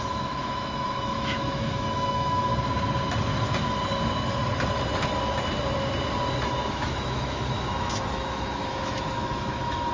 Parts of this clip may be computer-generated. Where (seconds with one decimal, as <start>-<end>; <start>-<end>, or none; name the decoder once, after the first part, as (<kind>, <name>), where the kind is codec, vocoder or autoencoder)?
0.0-2.5 (autoencoder, DAC-VAE); 6.7-9.9